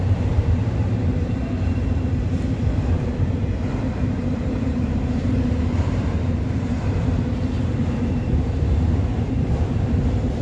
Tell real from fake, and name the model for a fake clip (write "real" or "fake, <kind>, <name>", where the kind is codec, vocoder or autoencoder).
fake, vocoder, BigVGAN v2